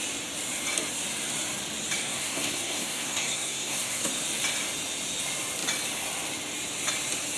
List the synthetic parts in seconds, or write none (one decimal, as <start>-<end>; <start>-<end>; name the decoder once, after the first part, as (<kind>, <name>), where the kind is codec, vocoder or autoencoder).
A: 2.0-4.1 (codec, SNAC)